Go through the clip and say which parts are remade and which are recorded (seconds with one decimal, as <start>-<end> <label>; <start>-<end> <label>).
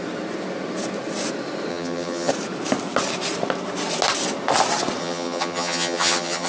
0.0-1.7 recorded; 1.7-2.3 remade; 2.3-5.0 recorded; 5.0-6.5 remade